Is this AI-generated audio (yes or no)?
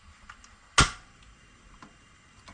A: no